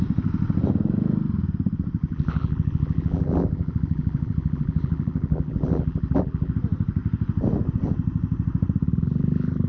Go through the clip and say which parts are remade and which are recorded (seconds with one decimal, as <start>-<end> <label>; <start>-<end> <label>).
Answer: 0.0-2.0 recorded; 2.0-6.5 remade; 6.5-8.8 recorded; 8.8-9.7 remade

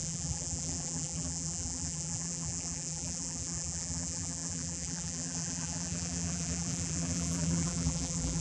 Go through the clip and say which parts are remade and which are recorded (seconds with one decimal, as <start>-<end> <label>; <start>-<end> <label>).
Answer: 0.0-8.4 remade

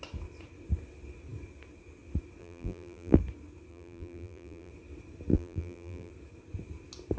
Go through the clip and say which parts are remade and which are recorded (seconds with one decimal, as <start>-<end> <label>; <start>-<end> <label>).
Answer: 0.0-2.4 recorded; 2.4-3.2 remade; 3.2-3.7 recorded; 3.7-4.7 remade; 4.7-5.3 recorded; 5.3-6.1 remade; 6.1-7.2 recorded

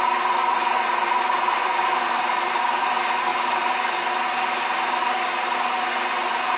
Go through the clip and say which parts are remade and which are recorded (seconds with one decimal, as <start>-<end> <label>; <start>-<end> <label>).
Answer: 0.0-6.6 recorded